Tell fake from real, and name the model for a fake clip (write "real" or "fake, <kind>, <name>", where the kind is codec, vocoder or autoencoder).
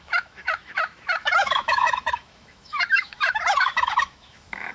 fake, autoencoder, DAC-VAE